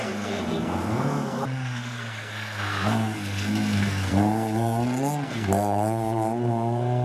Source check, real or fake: fake